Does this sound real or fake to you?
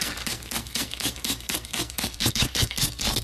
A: fake